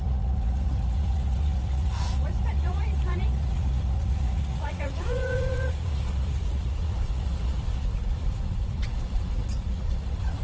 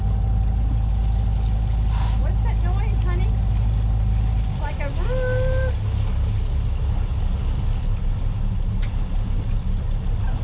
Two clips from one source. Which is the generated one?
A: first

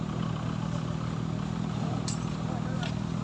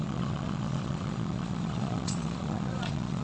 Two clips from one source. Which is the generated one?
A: second